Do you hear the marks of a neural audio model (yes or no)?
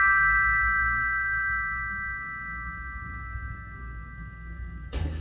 yes